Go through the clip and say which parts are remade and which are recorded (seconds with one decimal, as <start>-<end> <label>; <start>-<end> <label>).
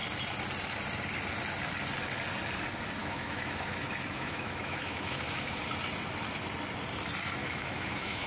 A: 0.0-3.0 recorded; 3.0-5.6 remade; 5.6-7.4 recorded; 7.4-8.3 remade